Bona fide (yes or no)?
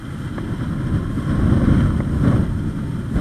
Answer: yes